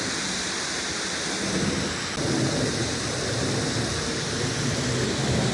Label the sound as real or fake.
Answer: real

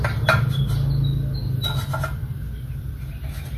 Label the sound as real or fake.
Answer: real